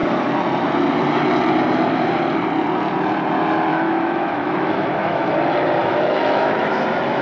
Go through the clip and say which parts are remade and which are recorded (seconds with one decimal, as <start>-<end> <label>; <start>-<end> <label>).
0.0-3.7 recorded; 3.7-5.3 remade; 5.3-5.8 recorded; 5.8-6.8 remade; 6.8-7.2 recorded